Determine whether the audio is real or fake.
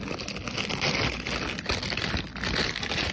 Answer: real